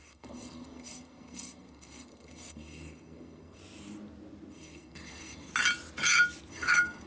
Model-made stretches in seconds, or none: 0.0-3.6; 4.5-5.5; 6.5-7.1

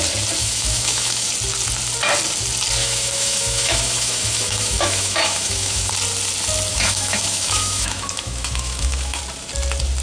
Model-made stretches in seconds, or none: 0.4-1.3; 2.8-5.9; 6.7-9.2